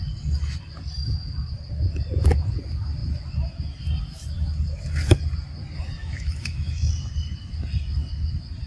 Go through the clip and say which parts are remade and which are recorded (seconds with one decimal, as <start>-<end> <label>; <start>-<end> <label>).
0.0-6.0 recorded; 6.0-6.9 remade; 6.9-8.7 recorded